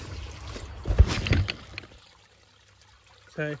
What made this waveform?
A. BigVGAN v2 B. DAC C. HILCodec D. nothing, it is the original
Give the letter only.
D